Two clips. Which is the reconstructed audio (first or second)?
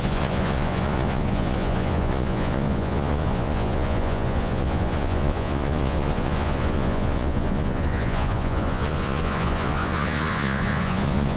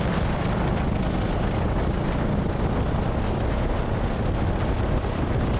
first